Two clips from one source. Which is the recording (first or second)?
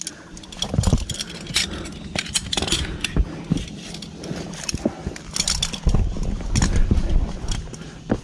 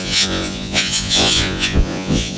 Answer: first